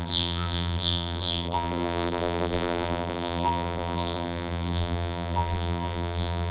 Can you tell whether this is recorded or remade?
remade